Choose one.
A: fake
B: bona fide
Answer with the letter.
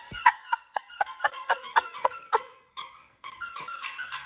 A